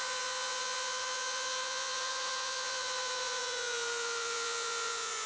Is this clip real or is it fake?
fake